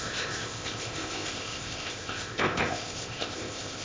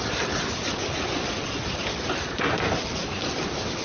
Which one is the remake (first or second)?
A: first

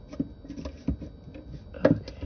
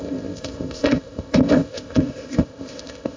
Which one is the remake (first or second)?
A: second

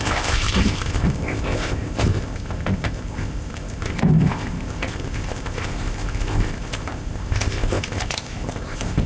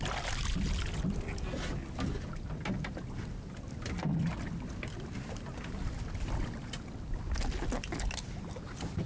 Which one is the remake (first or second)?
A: first